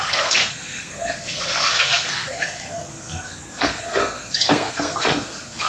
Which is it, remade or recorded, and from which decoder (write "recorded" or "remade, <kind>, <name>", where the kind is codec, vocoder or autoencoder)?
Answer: remade, codec, SNAC